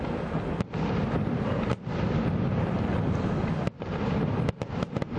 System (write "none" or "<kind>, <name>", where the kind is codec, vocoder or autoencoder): none